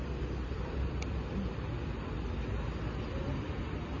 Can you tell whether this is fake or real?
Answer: real